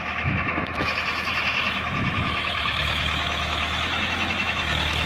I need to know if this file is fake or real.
fake